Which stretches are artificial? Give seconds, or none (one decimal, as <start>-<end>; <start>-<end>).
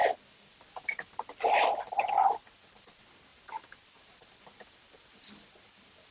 0.0-0.6; 3.3-6.1